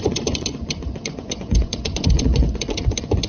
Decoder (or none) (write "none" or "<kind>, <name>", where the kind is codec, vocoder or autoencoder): vocoder, Vocos